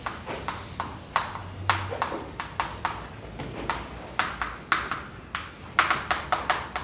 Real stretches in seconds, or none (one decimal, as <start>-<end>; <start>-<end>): 0.0-6.8